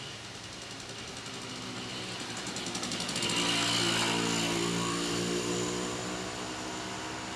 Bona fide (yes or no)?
yes